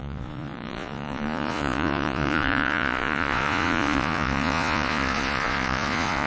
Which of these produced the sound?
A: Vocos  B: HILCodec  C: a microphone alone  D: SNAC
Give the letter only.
A